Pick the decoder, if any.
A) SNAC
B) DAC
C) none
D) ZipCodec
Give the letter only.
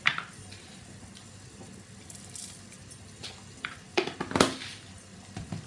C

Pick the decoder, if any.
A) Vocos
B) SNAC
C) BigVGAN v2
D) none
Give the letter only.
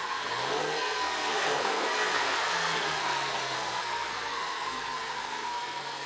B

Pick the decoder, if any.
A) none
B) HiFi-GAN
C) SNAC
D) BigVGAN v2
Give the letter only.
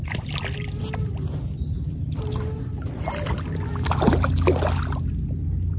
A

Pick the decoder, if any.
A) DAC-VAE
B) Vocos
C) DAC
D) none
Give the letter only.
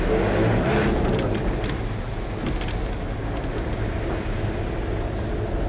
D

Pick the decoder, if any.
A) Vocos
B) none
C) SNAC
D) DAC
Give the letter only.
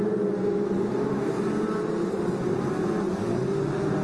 B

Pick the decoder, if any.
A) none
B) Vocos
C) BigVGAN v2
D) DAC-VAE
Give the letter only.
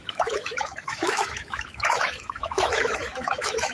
D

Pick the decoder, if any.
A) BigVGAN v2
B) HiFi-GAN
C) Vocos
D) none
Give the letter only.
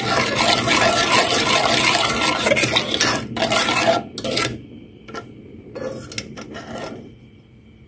D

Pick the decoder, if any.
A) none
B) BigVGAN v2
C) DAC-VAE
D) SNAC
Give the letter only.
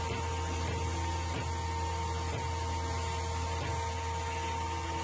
A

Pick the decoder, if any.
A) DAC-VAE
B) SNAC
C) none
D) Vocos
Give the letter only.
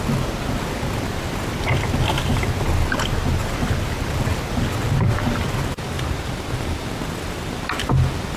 C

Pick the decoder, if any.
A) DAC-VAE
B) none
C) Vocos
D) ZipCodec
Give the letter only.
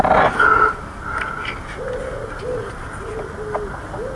B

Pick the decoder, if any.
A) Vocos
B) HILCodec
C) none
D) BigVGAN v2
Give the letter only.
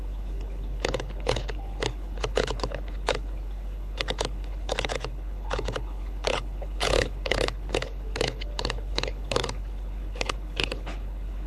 B